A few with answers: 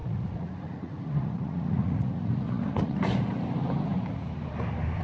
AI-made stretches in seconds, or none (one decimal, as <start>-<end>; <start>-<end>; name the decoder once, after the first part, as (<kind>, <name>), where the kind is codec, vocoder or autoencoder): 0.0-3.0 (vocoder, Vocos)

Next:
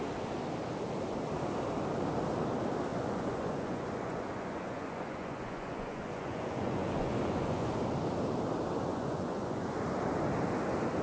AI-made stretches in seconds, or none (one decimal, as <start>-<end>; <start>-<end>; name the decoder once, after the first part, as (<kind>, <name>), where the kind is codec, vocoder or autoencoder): 2.9-7.8 (vocoder, Vocos); 8.9-9.7

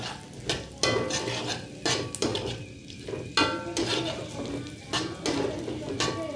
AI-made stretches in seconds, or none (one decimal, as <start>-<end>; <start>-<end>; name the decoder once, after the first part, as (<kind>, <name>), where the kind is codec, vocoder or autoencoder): none